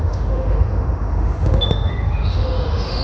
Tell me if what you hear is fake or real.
fake